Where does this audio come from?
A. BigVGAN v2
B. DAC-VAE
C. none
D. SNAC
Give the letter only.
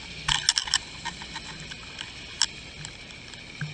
C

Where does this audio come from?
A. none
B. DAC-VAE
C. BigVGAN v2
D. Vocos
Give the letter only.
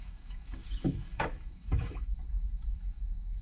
B